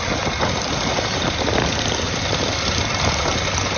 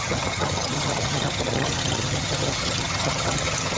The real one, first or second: first